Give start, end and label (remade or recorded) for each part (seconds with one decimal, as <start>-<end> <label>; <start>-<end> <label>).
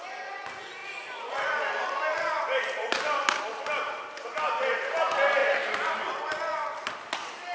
0.0-0.8 recorded; 0.8-3.4 remade; 3.4-7.5 recorded